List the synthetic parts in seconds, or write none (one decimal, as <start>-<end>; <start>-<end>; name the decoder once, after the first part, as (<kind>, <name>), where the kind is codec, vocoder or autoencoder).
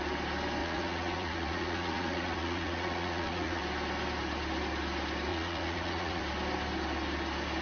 0.6-3.6 (vocoder, Vocos); 5.3-6.2